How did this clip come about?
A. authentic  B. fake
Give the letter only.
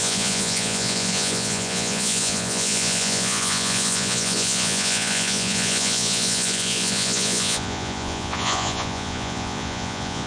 B